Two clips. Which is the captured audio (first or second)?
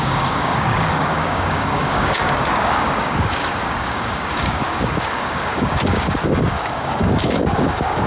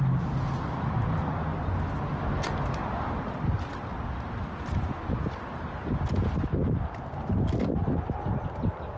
second